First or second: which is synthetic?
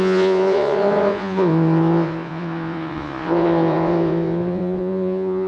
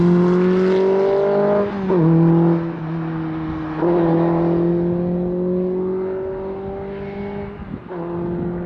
first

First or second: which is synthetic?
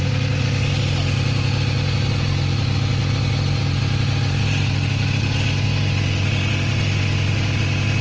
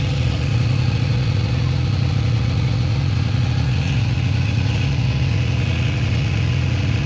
second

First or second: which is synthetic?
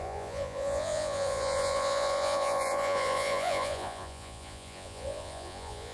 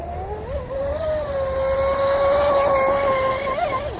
first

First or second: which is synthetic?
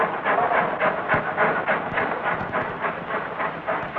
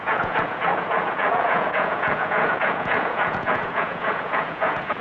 second